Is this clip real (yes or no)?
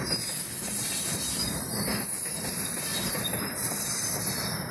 no